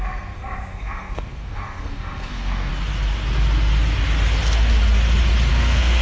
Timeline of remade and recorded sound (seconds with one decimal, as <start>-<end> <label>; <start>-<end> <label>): 0.0-2.7 remade; 2.7-5.5 recorded; 5.5-6.0 remade

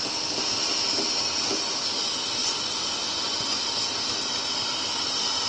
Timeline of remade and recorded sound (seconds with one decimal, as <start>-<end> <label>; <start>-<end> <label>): 0.0-2.4 recorded; 2.4-3.6 remade; 3.6-5.5 recorded

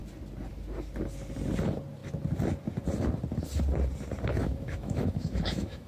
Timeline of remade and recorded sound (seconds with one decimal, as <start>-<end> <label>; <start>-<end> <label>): 0.0-4.4 recorded; 4.4-5.9 remade